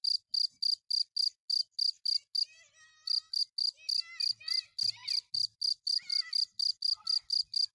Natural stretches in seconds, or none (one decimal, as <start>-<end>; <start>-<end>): 0.0-7.7